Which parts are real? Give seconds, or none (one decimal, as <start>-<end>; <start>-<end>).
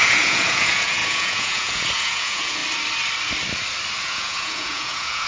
2.6-4.0